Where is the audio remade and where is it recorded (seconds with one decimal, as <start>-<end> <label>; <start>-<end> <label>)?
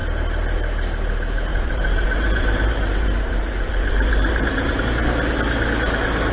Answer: 0.0-1.5 recorded; 1.5-4.8 remade; 4.8-6.3 recorded